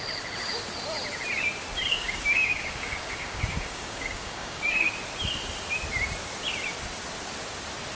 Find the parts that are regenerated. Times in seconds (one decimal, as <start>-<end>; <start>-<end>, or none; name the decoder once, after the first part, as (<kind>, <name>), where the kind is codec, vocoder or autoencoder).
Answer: 1.9-4.9 (codec, DAC)